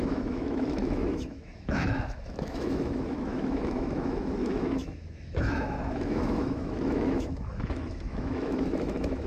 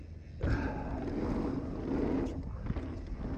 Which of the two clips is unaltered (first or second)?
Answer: second